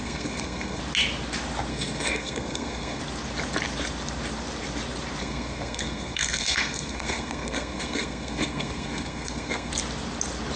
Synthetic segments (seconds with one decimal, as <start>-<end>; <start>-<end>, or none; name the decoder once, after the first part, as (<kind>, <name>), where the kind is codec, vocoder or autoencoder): 0.0-0.8 (codec, SNAC); 1.7-3.0; 5.2-9.7